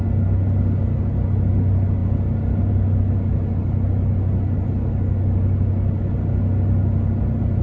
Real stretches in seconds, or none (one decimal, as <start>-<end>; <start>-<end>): 0.0-7.6